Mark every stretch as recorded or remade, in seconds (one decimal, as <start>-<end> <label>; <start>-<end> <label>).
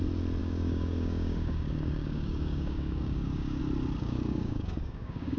0.0-0.4 recorded; 0.4-3.6 remade; 3.6-4.0 recorded; 4.0-5.4 remade